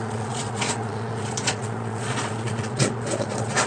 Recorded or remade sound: remade